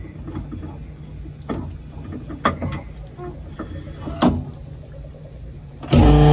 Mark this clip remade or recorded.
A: recorded